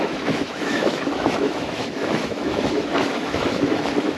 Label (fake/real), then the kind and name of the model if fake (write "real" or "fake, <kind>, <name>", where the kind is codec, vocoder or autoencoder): fake, autoencoder, DAC-VAE